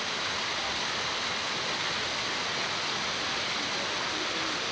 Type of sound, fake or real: real